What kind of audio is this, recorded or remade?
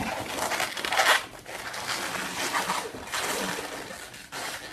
recorded